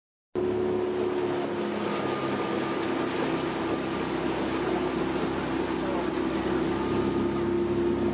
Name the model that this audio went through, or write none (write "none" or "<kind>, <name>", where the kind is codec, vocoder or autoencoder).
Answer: none